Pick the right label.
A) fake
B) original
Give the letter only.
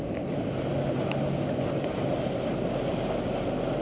B